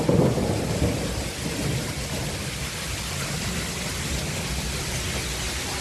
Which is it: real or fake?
real